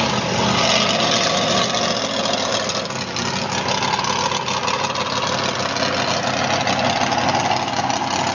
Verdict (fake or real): real